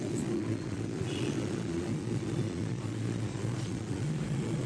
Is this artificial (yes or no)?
yes